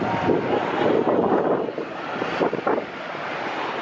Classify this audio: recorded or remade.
recorded